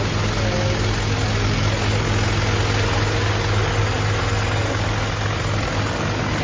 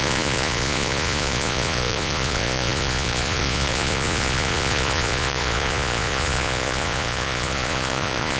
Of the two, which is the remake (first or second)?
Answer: second